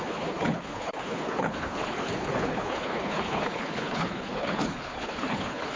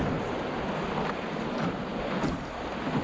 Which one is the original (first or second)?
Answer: second